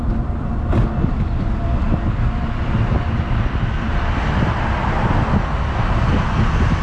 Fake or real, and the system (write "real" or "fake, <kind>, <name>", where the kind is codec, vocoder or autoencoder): real